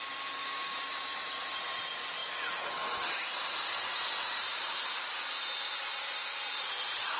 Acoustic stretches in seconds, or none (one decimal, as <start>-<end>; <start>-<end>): none